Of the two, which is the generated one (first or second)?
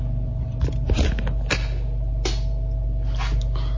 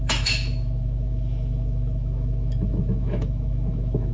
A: second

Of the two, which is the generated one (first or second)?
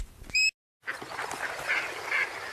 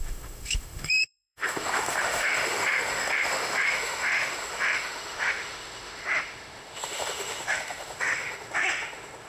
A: second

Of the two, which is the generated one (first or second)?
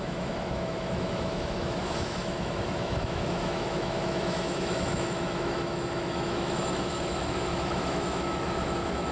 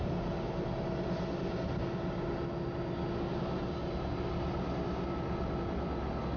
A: first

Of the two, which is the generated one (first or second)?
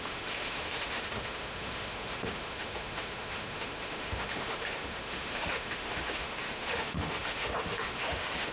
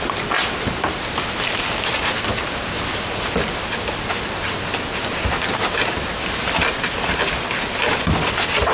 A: first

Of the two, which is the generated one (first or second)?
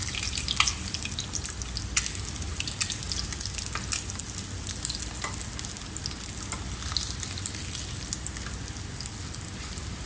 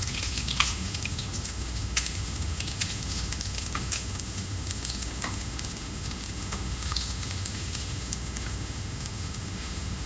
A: second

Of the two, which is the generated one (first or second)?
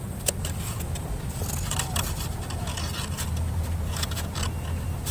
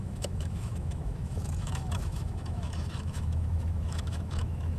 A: second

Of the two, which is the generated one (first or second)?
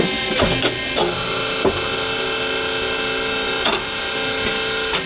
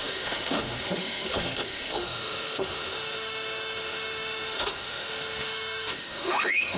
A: second